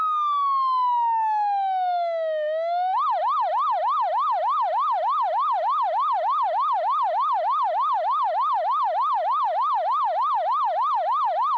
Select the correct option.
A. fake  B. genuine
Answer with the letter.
B